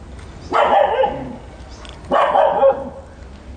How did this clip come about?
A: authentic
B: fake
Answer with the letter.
A